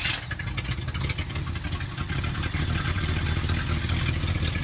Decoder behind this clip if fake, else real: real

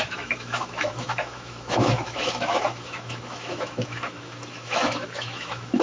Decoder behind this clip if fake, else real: fake, autoencoder, DAC-VAE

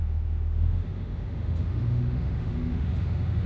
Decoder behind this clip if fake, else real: fake, autoencoder, DAC-VAE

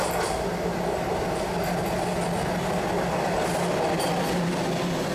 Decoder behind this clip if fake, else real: real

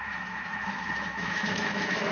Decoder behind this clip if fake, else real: fake, autoencoder, DAC-VAE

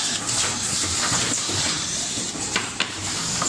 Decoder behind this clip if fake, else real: fake, vocoder, BigVGAN v2